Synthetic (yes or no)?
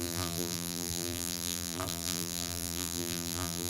yes